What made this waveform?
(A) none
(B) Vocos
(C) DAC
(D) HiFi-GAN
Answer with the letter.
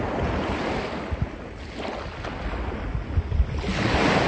A